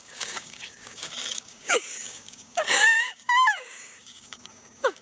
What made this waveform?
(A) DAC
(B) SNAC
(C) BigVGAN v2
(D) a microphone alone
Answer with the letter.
A